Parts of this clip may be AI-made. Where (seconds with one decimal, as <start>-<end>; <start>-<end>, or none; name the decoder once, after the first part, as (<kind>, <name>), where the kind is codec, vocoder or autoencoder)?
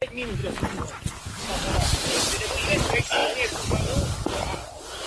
none